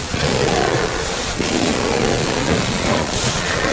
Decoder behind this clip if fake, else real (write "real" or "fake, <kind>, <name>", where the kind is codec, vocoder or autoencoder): fake, vocoder, Vocos